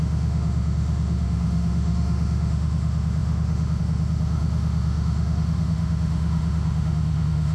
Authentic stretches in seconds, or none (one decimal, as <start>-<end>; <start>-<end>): none

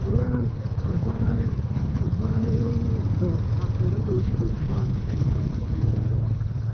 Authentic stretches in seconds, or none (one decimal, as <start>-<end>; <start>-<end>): 2.7-4.0

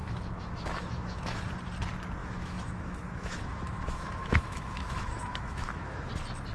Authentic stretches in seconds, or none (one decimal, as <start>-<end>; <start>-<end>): 1.4-2.2; 6.1-6.5

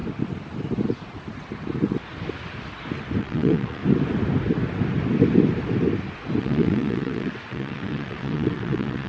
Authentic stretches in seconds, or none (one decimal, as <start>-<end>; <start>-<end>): 0.0-3.2; 3.8-6.4

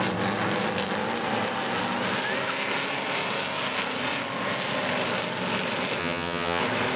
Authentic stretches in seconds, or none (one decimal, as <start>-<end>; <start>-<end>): 0.0-6.0; 6.6-7.0